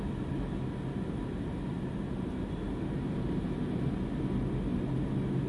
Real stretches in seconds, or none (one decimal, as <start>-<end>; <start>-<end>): 0.0-5.5

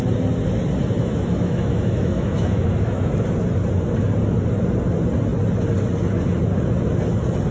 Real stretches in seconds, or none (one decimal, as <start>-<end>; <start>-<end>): 0.0-1.0; 3.1-7.5

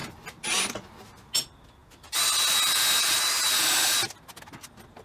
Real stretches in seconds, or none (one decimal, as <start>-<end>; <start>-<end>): 0.0-5.0

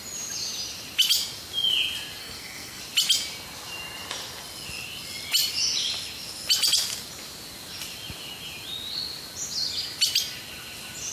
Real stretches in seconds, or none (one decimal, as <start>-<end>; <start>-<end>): 0.0-2.2; 2.8-11.1

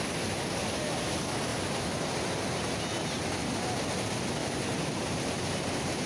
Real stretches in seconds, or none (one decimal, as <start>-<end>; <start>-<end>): 0.0-4.4

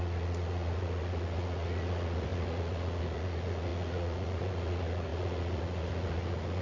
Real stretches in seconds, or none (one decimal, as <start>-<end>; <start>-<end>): none

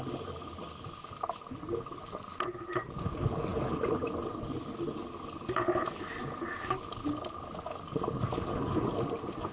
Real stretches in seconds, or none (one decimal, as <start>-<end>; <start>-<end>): 0.0-1.0; 3.0-9.5